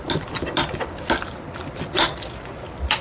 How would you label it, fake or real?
real